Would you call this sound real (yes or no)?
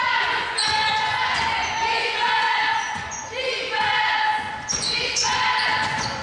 no